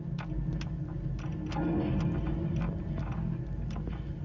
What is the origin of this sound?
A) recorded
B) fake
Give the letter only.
A